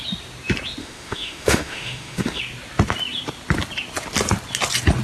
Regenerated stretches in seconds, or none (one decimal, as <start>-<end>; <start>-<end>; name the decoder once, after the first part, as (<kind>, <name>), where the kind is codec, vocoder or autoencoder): 0.8-2.4 (autoencoder, DAC-VAE)